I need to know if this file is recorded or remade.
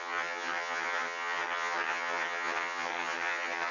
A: remade